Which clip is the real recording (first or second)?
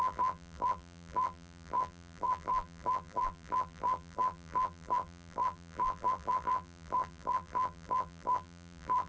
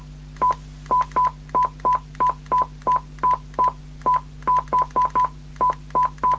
second